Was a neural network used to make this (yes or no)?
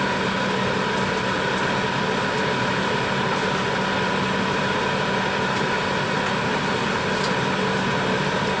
no